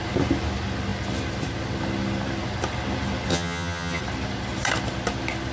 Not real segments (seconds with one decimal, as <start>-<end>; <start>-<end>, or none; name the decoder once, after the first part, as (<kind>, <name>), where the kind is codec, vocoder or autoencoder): 3.3-4.0 (vocoder, HiFi-GAN)